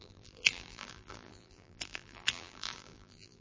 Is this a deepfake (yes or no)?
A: yes